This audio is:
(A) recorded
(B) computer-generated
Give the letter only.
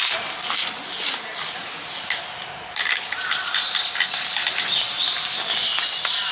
A